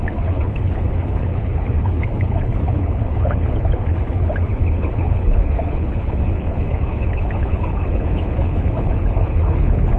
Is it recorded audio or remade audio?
remade